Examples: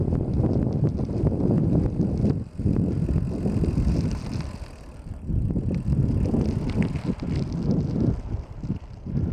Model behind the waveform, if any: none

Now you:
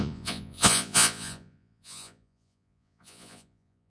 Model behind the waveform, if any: vocoder, Vocos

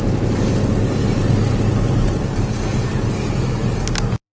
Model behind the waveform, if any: none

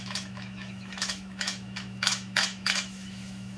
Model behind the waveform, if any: autoencoder, DAC-VAE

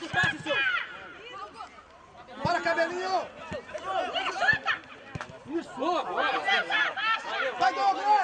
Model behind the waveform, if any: none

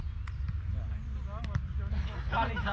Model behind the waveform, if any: none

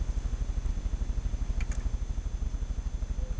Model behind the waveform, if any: none